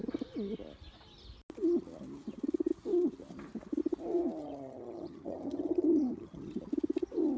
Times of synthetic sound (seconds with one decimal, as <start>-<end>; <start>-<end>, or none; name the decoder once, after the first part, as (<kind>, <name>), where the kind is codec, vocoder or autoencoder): 4.4-6.5 (vocoder, HiFi-GAN)